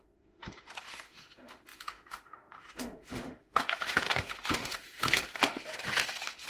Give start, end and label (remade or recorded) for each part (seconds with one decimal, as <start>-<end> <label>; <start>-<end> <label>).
0.0-6.5 remade